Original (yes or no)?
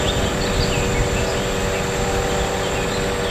yes